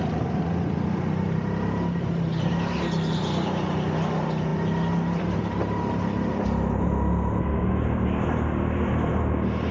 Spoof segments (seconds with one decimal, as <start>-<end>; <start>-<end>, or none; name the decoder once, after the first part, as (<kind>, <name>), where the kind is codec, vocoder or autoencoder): none